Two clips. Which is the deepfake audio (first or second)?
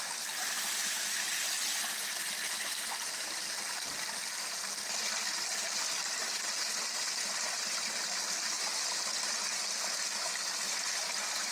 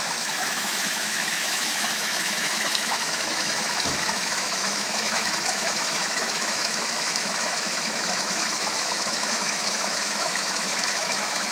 second